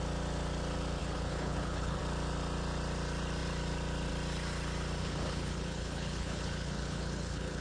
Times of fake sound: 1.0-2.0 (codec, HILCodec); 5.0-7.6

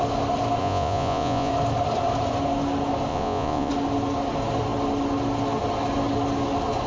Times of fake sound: 0.6-1.5 (vocoder, Vocos); 3.1-3.7

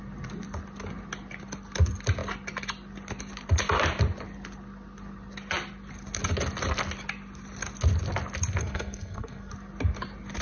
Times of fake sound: 8.6-9.5 (codec, SNAC)

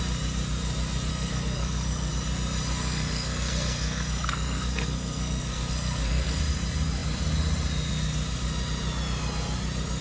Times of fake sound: 1.1-2.1 (codec, SNAC); 2.8-6.4

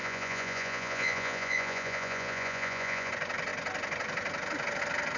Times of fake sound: 0.0-3.1 (vocoder, Vocos)

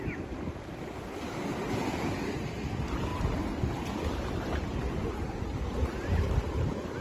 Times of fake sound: none

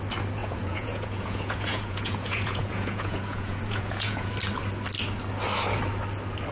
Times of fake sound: 0.4-4.3 (vocoder, Vocos)

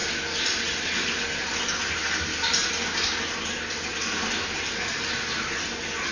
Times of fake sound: none